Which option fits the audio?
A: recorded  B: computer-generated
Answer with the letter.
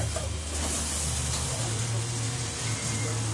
A